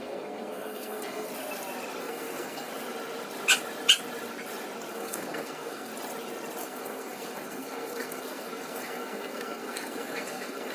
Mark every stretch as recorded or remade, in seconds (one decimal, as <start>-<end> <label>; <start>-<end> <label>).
0.0-1.3 remade; 1.3-2.0 recorded; 2.0-2.7 remade; 2.7-4.9 recorded; 4.9-5.9 remade; 5.9-6.6 recorded; 6.6-10.7 remade